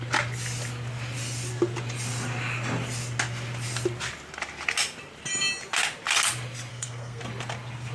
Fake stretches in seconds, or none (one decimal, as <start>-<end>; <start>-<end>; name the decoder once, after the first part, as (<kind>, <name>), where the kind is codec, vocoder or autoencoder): 6.7-7.2 (codec, SNAC)